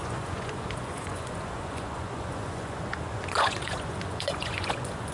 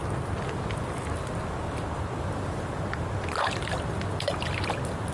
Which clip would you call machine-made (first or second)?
first